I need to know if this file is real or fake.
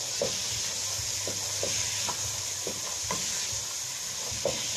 real